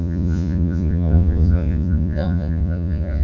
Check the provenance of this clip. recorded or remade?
remade